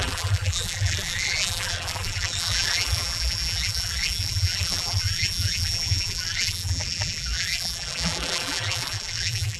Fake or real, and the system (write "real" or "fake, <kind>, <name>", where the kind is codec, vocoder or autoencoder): fake, vocoder, BigVGAN v2